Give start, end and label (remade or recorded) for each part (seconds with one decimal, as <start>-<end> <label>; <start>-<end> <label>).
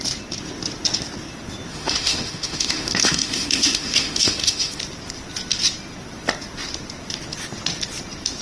0.0-1.7 recorded; 1.7-4.8 remade; 4.8-8.4 recorded